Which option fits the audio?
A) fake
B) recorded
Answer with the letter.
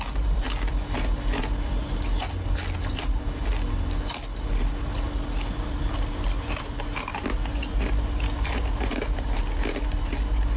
B